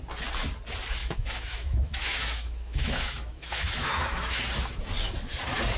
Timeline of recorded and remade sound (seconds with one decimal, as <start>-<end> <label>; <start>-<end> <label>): 0.0-1.0 recorded; 1.0-4.4 remade; 4.4-5.8 recorded